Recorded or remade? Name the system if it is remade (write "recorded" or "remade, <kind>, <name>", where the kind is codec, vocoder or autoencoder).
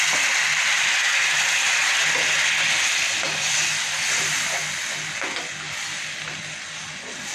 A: recorded